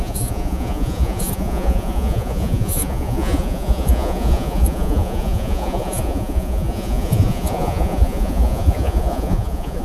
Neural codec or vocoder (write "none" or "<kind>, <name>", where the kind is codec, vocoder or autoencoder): vocoder, Vocos